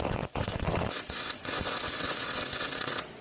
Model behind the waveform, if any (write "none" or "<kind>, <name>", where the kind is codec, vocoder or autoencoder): vocoder, WaveNeXt